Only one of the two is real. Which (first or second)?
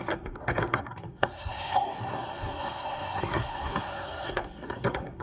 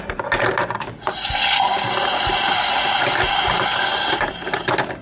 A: second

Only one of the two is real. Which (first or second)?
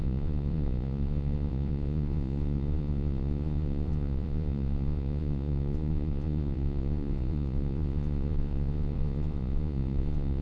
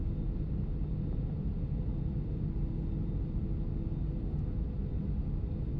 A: second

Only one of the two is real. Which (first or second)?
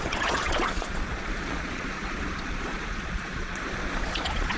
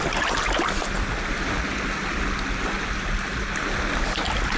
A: second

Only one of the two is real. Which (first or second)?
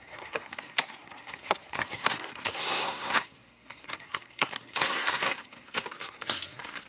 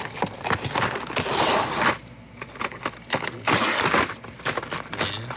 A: second